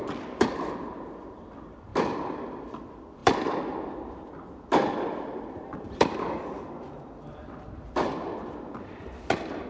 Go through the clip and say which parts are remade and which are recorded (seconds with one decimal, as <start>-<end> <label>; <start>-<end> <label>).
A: 0.0-1.9 remade; 1.9-2.7 recorded; 2.7-9.7 remade